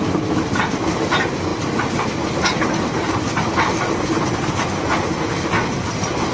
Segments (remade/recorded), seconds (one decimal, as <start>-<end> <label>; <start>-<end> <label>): 0.0-6.3 recorded